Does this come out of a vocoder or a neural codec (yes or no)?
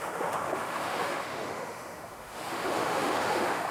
yes